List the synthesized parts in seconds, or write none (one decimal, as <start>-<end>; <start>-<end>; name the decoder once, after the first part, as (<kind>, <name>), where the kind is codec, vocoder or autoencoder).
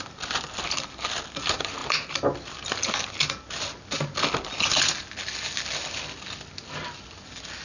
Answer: none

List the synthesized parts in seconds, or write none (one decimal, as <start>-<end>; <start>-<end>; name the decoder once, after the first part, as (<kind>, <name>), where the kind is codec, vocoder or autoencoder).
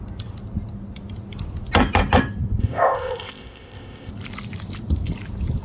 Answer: 2.6-4.1 (codec, ZipCodec)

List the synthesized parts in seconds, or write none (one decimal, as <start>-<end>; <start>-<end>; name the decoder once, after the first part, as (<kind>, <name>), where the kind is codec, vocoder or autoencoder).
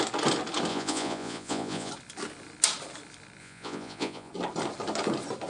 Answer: 0.7-1.9 (vocoder, Vocos); 3.4-4.3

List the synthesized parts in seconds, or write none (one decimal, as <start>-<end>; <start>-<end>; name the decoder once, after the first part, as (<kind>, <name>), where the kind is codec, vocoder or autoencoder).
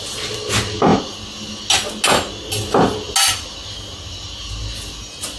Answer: none